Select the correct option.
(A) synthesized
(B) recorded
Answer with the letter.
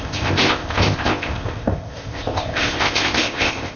A